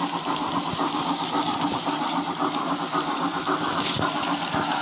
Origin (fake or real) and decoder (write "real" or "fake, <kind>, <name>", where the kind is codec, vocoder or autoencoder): real